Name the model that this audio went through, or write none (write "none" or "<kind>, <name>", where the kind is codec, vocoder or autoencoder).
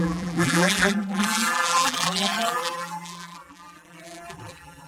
vocoder, BigVGAN v2